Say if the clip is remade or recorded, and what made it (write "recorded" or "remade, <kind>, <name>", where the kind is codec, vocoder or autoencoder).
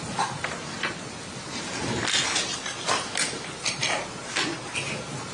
recorded